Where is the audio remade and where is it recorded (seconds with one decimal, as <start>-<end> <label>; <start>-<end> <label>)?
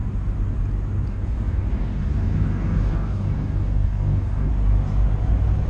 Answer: 0.0-1.1 recorded; 1.1-4.5 remade; 4.5-5.7 recorded